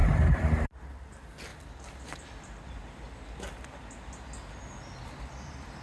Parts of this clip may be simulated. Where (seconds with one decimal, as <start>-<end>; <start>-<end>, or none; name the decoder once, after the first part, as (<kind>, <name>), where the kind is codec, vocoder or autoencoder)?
0.0-1.5 (vocoder, BigVGAN v2); 5.0-5.8